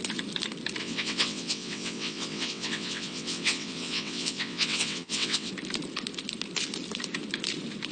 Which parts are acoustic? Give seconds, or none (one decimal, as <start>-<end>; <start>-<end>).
0.0-0.8; 5.5-7.9